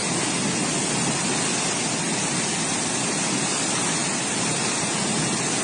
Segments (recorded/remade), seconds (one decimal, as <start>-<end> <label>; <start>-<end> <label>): 0.0-5.6 recorded